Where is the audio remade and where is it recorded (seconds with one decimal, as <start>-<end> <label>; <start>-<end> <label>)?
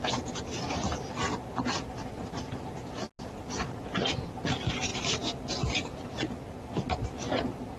0.0-7.8 recorded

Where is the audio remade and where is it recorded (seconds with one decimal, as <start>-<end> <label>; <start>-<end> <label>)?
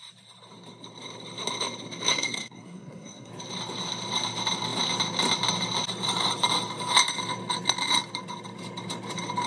0.0-2.1 recorded; 2.1-3.3 remade; 3.3-9.5 recorded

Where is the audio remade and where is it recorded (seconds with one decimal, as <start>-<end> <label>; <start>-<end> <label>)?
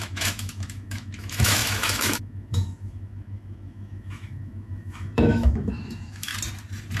0.0-6.3 remade; 6.3-7.0 recorded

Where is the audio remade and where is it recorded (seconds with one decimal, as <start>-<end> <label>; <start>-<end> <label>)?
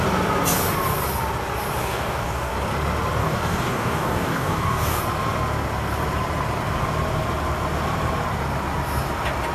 0.0-1.8 recorded; 1.8-2.5 remade; 2.5-3.2 recorded; 3.2-5.0 remade; 5.0-9.5 recorded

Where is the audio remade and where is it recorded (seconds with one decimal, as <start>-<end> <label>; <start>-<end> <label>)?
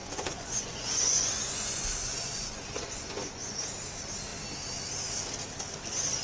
0.0-3.7 remade; 3.7-6.2 recorded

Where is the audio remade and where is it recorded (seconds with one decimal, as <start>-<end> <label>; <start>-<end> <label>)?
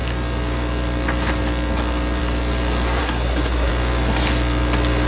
0.0-3.0 recorded; 3.0-3.7 remade; 3.7-5.1 recorded